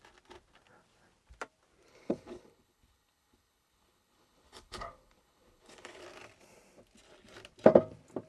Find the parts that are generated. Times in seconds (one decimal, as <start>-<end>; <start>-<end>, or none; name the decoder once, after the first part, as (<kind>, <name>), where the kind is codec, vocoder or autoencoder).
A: 1.9-6.0 (codec, HILCodec)